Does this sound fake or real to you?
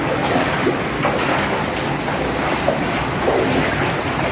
real